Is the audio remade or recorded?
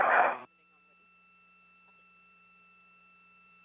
remade